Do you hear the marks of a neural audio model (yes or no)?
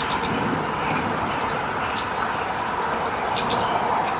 no